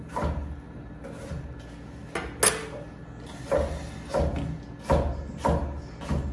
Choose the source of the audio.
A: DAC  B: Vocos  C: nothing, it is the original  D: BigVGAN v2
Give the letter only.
C